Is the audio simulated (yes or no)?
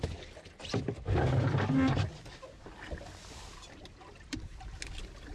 no